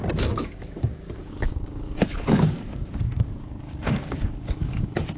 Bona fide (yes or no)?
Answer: no